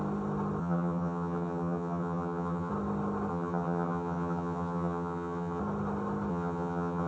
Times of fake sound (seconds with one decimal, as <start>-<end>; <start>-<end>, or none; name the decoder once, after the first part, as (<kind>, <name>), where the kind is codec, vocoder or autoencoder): 0.6-2.7 (vocoder, HiFi-GAN); 3.3-5.6; 6.3-7.1